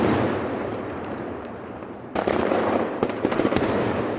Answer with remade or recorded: remade